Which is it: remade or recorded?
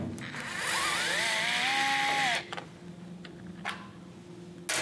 recorded